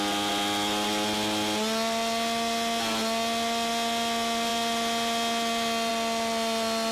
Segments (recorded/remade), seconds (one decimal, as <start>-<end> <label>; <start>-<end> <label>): 0.0-6.9 recorded